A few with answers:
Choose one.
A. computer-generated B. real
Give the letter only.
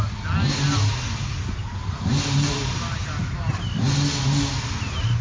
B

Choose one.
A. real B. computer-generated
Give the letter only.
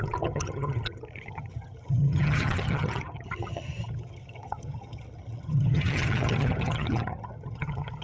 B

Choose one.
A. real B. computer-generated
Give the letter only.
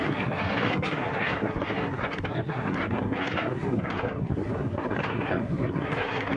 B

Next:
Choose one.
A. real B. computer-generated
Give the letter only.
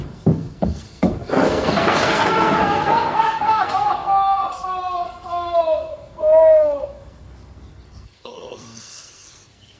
B